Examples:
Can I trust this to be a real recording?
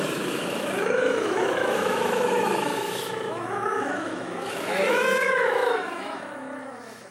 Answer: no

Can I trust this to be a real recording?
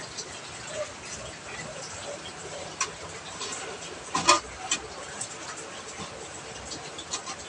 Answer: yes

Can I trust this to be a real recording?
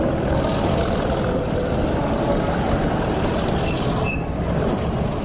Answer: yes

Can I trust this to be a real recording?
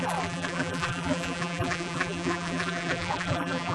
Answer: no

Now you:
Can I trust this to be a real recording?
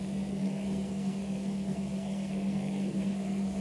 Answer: no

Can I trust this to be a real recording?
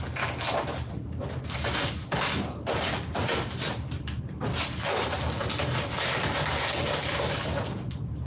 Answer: yes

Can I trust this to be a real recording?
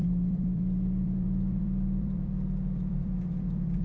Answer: no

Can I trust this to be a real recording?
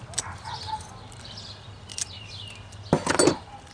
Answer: yes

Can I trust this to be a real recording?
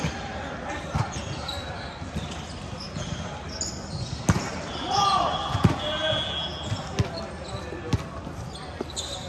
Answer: yes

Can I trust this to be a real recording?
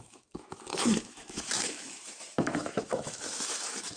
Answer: no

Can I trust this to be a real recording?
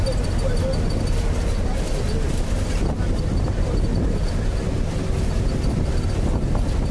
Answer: yes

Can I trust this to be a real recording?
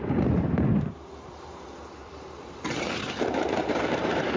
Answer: no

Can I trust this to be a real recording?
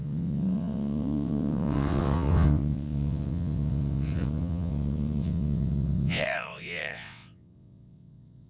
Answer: no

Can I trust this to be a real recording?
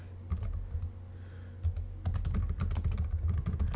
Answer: yes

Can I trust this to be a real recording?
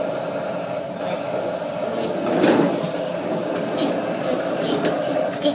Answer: yes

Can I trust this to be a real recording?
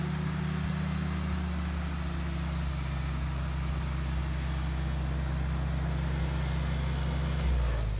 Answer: yes